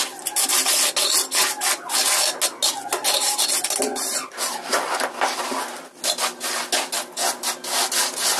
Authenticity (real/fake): real